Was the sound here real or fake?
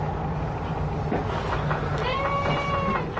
real